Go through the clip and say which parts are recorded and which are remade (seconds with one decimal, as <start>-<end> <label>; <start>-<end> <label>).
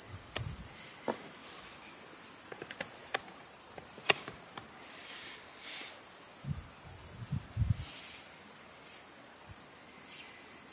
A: 0.0-3.0 recorded; 3.0-4.6 remade; 4.6-10.7 recorded